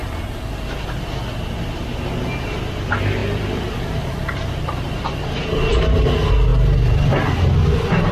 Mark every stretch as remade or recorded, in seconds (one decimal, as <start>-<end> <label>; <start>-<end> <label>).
0.0-0.6 remade; 0.6-3.2 recorded; 3.2-5.4 remade; 5.4-8.1 recorded